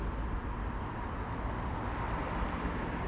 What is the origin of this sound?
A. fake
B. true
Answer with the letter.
B